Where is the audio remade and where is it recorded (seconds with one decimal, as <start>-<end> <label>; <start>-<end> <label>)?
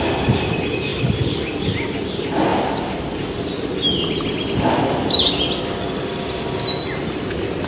0.0-7.7 recorded